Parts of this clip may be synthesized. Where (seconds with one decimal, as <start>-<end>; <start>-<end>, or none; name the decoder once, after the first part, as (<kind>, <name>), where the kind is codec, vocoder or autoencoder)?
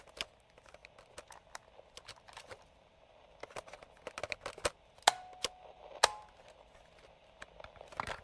none